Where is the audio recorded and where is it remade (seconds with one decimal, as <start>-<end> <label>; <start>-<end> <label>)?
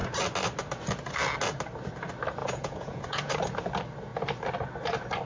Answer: 0.0-2.4 recorded; 2.4-3.3 remade; 3.3-5.3 recorded